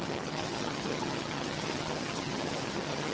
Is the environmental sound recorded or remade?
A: remade